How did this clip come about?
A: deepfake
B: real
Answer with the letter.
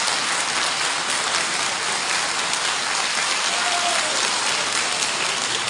B